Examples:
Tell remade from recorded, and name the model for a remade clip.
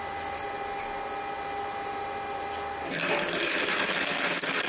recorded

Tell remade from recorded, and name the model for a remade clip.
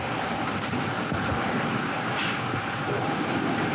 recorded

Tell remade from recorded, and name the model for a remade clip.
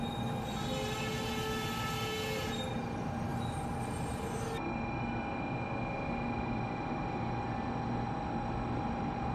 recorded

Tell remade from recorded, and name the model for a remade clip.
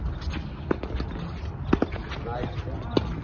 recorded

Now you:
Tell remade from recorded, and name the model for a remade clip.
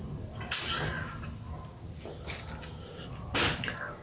recorded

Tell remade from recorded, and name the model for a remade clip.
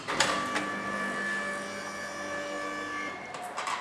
recorded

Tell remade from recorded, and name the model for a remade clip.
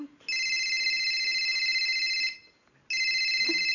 recorded